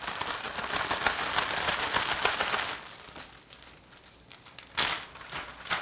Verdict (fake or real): real